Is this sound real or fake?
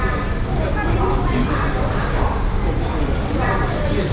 fake